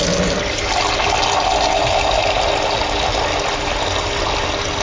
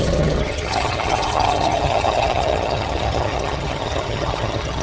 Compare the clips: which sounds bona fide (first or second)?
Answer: first